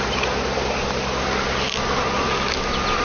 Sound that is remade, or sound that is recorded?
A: recorded